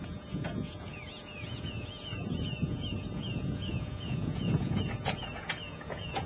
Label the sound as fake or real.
fake